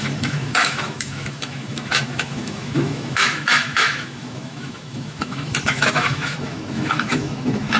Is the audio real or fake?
fake